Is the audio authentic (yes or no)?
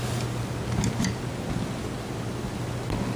yes